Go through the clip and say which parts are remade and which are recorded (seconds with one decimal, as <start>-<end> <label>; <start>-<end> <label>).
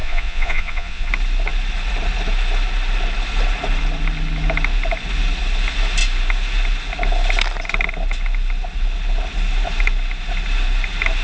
0.0-1.1 remade; 1.1-11.2 recorded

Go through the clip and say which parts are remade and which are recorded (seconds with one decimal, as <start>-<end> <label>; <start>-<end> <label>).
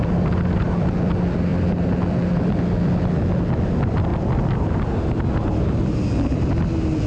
0.0-7.1 recorded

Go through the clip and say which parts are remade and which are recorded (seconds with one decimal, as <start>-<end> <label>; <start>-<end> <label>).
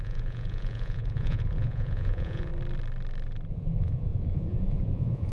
0.0-2.5 remade; 2.5-3.5 recorded; 3.5-5.3 remade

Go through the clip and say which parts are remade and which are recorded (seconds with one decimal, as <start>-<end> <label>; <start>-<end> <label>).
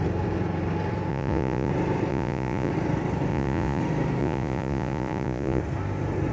0.0-1.1 recorded; 1.1-1.7 remade; 1.7-2.1 recorded; 2.1-2.7 remade; 2.7-3.3 recorded; 3.3-3.8 remade; 3.8-4.2 recorded; 4.2-5.6 remade; 5.6-6.3 recorded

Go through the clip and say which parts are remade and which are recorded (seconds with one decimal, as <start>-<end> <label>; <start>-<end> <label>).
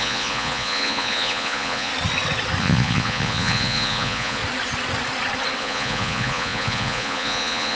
0.0-1.9 remade; 1.9-2.6 recorded; 2.6-4.4 remade; 4.4-5.6 recorded; 5.6-7.7 remade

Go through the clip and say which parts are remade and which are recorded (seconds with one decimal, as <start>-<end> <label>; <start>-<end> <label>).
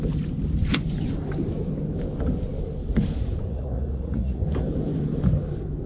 0.0-3.5 recorded; 3.5-4.4 remade; 4.4-5.9 recorded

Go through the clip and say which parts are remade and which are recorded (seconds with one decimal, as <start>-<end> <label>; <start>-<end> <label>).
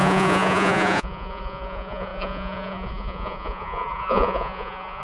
0.0-5.0 remade